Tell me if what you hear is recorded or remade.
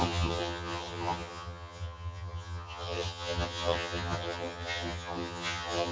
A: remade